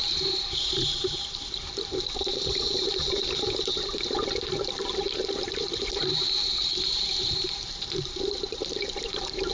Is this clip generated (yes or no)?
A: yes